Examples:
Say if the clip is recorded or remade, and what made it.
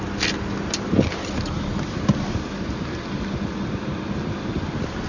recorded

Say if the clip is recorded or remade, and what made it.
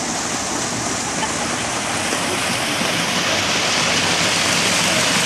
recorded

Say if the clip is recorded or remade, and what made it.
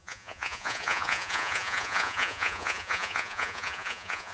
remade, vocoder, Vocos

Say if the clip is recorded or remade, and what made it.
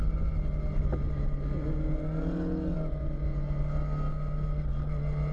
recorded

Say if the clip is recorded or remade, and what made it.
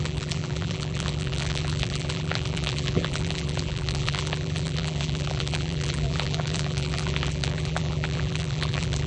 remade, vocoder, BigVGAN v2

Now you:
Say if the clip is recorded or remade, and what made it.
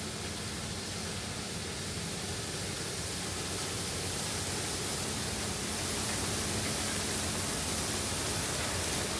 recorded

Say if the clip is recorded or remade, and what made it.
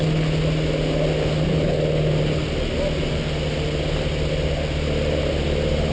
recorded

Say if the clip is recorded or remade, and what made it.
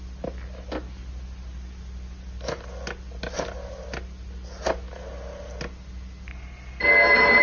recorded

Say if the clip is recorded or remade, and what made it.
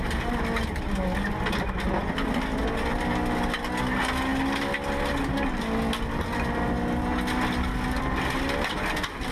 recorded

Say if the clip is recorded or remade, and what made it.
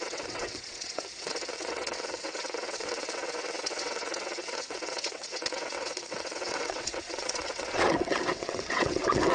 remade, vocoder, WaveNeXt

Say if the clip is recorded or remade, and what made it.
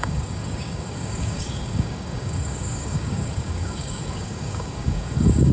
remade, codec, DAC